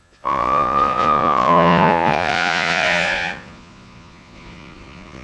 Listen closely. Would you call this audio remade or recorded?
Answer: remade